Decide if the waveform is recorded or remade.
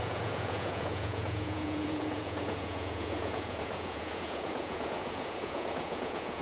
remade